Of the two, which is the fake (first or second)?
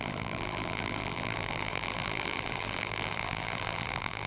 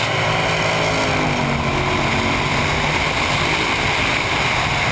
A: first